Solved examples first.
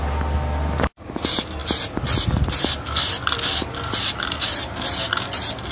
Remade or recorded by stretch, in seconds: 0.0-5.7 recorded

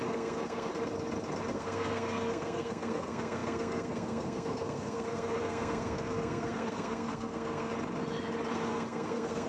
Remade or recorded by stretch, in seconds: 0.0-0.7 remade; 0.7-1.5 recorded; 1.5-7.7 remade; 7.7-8.5 recorded; 8.5-9.5 remade

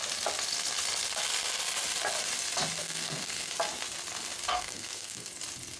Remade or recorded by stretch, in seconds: 0.0-2.8 recorded; 2.8-3.5 remade; 3.5-4.5 recorded; 4.5-5.3 remade; 5.3-5.8 recorded

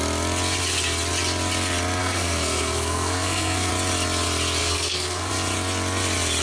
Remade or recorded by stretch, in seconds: 0.0-2.0 recorded; 2.0-3.7 remade; 3.7-4.6 recorded; 4.6-5.3 remade; 5.3-6.4 recorded

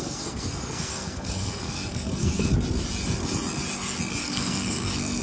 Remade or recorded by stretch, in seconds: 0.0-2.5 remade; 2.5-4.2 recorded; 4.2-5.2 remade

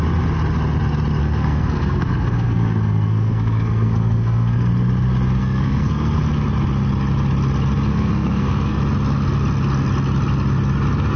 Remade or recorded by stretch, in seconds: 0.0-1.2 recorded; 1.2-4.7 remade; 4.7-5.4 recorded; 5.4-6.2 remade; 6.2-7.9 recorded; 7.9-8.8 remade; 8.8-11.2 recorded